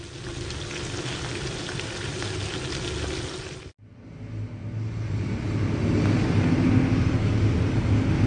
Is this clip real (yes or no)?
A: yes